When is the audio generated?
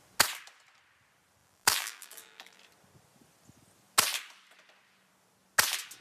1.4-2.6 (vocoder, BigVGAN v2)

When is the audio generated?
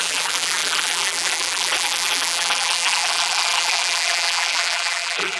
0.0-5.4 (vocoder, BigVGAN v2)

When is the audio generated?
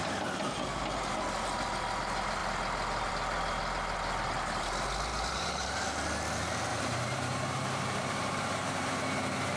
5.1-5.8 (vocoder, BigVGAN v2); 6.7-8.9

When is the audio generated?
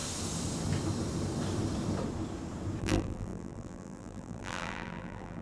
2.8-5.4 (vocoder, BigVGAN v2)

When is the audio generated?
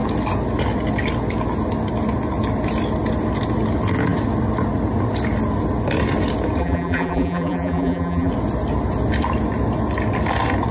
6.6-8.3 (vocoder, BigVGAN v2)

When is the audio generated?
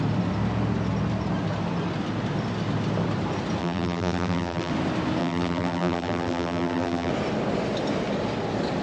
3.6-4.7 (vocoder, BigVGAN v2); 5.2-7.1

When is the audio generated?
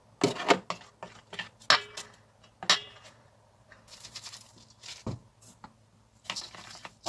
2.8-4.5 (vocoder, BigVGAN v2)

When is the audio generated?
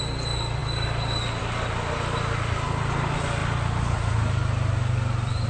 0.0-5.5 (vocoder, BigVGAN v2)